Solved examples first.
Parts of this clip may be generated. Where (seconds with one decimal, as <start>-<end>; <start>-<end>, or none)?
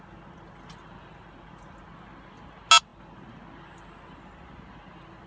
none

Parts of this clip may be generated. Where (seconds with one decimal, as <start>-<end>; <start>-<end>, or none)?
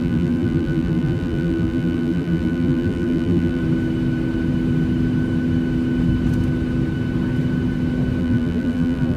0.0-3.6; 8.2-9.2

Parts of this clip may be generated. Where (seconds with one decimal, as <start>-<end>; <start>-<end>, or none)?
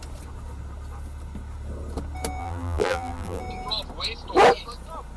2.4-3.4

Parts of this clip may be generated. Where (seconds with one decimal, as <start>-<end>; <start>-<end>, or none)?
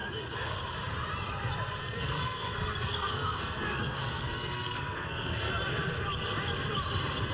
0.0-0.6; 1.8-5.5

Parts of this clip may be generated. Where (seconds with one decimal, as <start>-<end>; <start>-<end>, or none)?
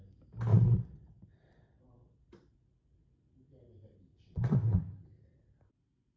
0.5-2.2; 4.1-4.8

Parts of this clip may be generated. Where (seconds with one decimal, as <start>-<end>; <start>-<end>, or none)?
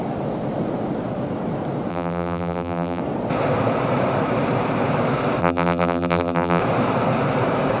1.9-3.0; 5.4-6.6